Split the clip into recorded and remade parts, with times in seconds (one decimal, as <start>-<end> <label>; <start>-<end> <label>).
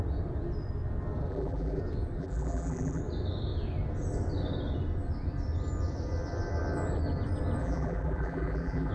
0.0-1.3 recorded; 1.3-1.8 remade; 1.8-2.2 recorded; 2.2-3.0 remade; 3.0-7.6 recorded; 7.6-8.9 remade